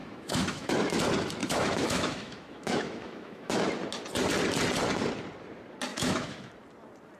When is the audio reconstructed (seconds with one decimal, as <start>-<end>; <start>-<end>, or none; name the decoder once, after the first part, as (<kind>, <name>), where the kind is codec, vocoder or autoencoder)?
0.0-0.7 (autoencoder, DAC-VAE); 1.4-3.7; 5.9-6.5